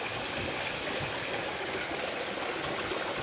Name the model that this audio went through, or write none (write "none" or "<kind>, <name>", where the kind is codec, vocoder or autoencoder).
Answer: none